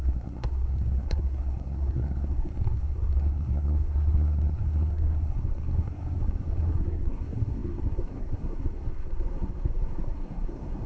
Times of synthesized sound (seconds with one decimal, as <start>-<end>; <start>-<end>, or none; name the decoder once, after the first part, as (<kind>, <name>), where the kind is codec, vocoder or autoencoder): 0.0-10.9 (codec, SNAC)